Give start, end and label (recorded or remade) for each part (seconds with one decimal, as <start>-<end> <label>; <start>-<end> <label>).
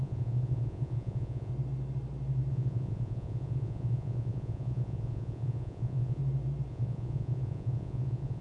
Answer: 0.0-1.5 remade; 1.5-2.5 recorded; 2.5-6.2 remade; 6.2-6.7 recorded; 6.7-8.4 remade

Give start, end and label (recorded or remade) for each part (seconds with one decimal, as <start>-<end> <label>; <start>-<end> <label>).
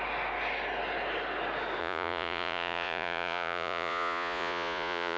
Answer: 0.0-1.8 recorded; 1.8-5.2 remade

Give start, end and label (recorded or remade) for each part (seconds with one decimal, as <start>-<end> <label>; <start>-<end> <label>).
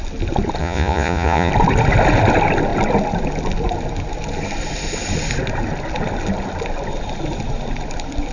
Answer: 0.0-0.6 recorded; 0.6-1.5 remade; 1.5-8.3 recorded